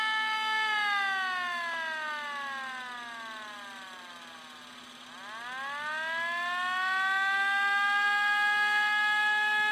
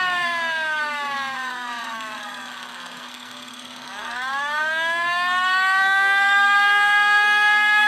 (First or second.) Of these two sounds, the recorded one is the first